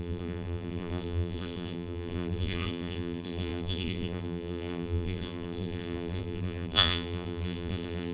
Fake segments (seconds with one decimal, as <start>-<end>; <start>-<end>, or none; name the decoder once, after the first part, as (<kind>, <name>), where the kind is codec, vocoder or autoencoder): 0.0-8.1 (vocoder, BigVGAN v2)